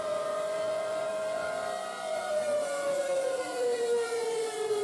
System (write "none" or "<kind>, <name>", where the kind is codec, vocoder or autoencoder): vocoder, Vocos